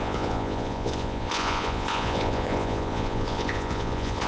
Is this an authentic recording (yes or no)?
no